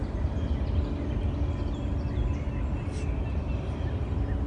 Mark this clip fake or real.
real